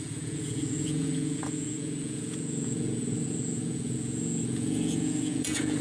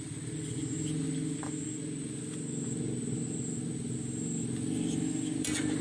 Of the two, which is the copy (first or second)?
first